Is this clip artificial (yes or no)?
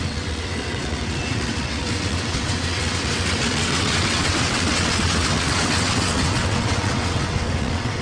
yes